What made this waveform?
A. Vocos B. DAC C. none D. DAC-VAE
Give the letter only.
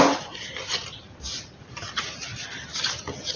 C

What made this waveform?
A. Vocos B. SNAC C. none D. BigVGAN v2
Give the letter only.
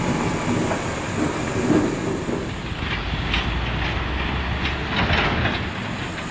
C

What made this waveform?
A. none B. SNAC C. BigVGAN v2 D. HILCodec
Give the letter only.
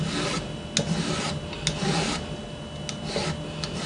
A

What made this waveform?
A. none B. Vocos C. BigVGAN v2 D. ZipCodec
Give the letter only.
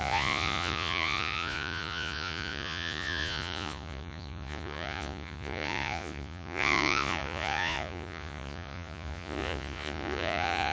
B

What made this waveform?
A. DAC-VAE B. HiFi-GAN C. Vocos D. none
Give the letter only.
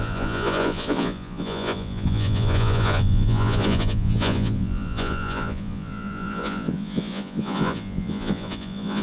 C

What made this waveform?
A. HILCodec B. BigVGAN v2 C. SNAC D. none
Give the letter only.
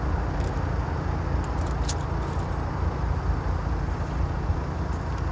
D